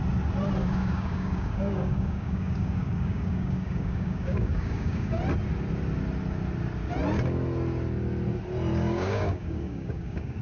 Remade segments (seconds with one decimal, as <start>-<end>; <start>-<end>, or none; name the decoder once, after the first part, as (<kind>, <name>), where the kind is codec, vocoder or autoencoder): 0.6-5.2 (codec, DAC); 8.7-10.4